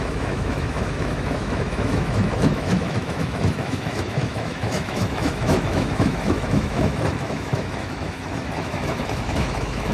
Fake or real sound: fake